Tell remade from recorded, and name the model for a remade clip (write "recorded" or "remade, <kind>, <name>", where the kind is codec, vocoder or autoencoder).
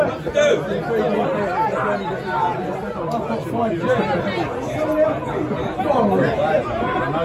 recorded